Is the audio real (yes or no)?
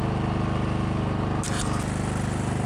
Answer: yes